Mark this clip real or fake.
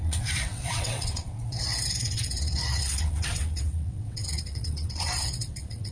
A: fake